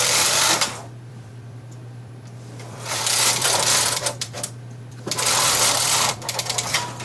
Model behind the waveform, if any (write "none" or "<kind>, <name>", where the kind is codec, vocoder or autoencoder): vocoder, BigVGAN v2